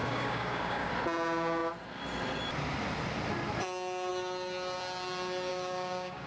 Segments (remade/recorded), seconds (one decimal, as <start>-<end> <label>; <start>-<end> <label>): 0.0-0.9 remade; 0.9-5.5 recorded; 5.5-6.3 remade